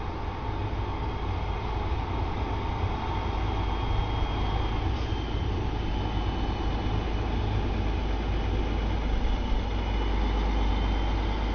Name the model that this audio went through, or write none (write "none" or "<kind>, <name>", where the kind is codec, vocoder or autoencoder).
none